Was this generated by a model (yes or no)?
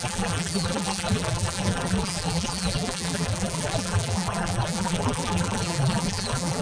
yes